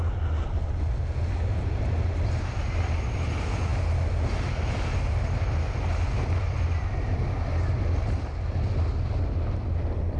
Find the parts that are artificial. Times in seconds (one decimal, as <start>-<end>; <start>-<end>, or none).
none